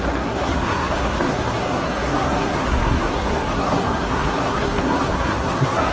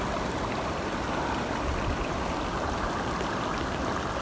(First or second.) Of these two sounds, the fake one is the first